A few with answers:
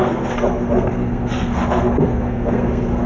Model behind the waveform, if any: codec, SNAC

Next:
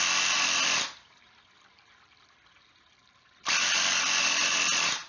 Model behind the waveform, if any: none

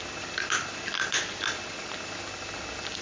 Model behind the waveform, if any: none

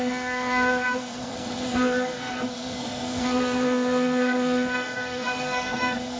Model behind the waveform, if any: codec, SNAC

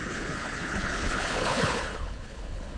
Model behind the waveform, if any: codec, HILCodec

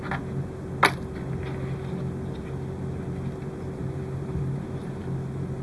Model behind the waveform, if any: none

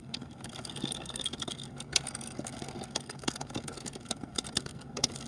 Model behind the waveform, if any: codec, SNAC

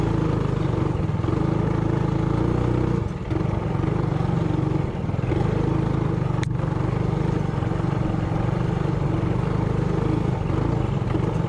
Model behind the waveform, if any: none